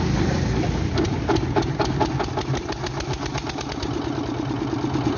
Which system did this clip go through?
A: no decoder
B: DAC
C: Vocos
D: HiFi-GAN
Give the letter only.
A